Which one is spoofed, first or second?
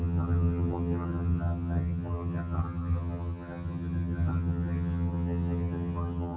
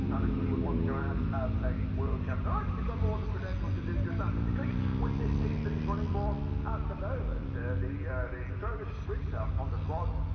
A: first